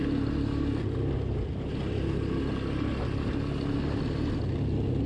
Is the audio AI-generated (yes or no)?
no